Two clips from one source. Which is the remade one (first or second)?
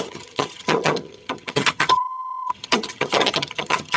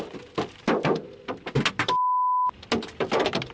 first